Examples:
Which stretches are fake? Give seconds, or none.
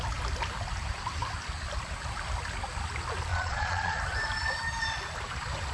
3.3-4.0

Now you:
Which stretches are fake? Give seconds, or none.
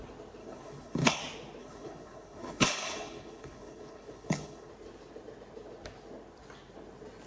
0.4-1.2; 1.6-4.7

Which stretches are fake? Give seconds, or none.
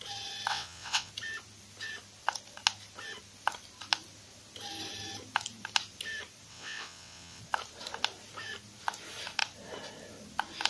0.5-1.1; 6.5-7.4